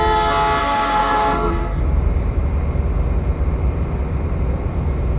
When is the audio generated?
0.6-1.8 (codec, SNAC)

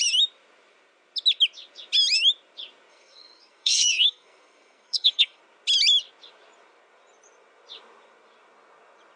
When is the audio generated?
2.9-5.4 (codec, SNAC)

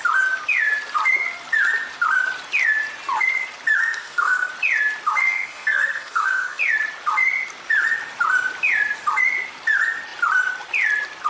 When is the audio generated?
3.8-4.5 (codec, SNAC); 5.2-6.6

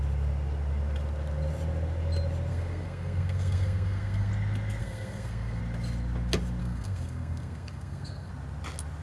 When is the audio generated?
2.5-4.3 (codec, SNAC); 4.8-5.6; 6.6-8.3

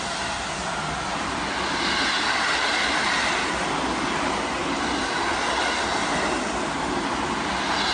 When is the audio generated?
none